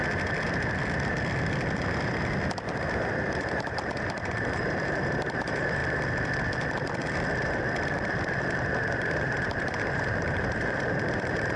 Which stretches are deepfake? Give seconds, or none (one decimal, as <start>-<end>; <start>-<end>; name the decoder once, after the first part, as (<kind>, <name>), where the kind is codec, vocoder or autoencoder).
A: 2.9-5.8 (vocoder, BigVGAN v2); 8.4-11.6